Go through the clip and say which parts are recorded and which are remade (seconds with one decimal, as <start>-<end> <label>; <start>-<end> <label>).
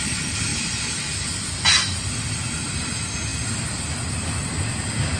0.0-5.2 recorded